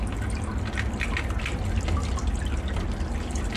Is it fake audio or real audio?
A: real